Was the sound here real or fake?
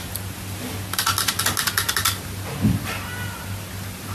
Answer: real